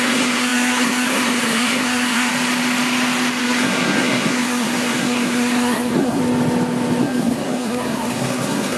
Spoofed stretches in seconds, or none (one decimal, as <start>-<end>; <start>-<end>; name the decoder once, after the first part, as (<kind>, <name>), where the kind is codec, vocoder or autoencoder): 0.0-2.3 (codec, SNAC); 3.4-6.2; 7.0-8.8